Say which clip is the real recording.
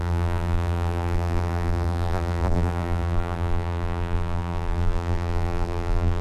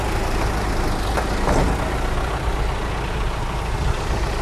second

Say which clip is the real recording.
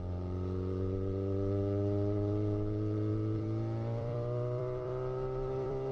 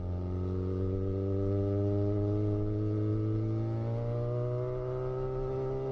second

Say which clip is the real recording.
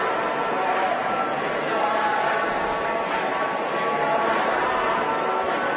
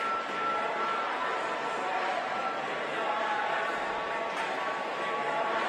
first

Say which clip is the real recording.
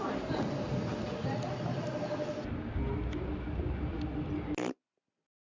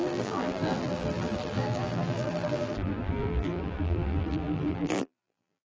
first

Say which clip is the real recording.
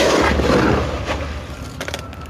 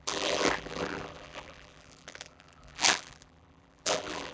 first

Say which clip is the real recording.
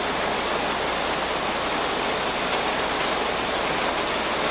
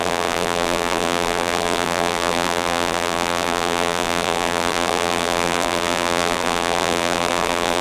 first